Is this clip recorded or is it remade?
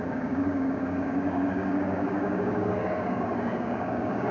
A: remade